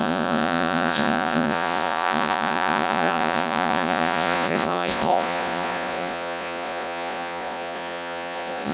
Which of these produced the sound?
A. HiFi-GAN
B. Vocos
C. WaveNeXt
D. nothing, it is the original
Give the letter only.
B